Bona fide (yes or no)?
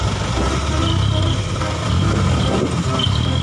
yes